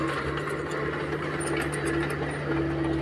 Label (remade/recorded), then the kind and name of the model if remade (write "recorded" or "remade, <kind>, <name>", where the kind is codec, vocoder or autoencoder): recorded